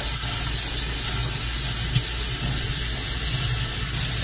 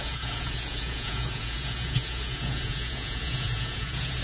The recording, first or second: first